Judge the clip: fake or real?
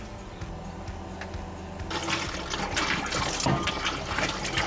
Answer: real